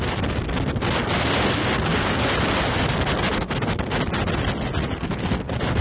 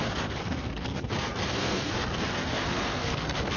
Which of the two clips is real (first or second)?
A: first